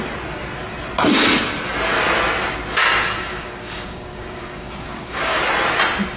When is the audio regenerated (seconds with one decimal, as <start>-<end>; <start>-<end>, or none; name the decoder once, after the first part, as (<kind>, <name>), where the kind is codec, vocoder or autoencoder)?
3.3-5.4 (codec, DAC)